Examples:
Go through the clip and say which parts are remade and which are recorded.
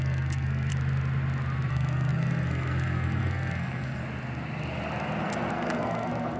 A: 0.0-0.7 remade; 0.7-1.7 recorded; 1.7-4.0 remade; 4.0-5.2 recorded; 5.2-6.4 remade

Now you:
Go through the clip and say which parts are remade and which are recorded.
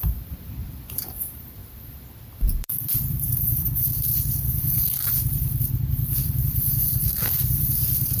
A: 0.0-8.2 remade